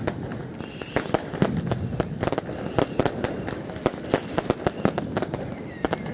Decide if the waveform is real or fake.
real